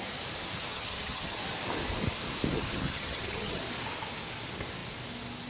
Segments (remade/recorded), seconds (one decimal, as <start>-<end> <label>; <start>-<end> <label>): 0.0-0.7 recorded; 0.7-1.4 remade; 1.4-2.5 recorded; 2.5-3.6 remade; 3.6-5.5 recorded